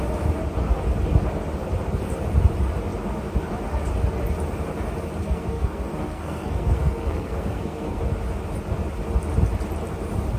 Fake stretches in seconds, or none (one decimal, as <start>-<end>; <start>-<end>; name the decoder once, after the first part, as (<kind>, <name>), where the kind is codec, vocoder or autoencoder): 5.2-8.0 (codec, SNAC)